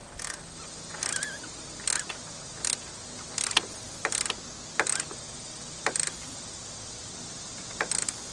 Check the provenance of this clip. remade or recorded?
recorded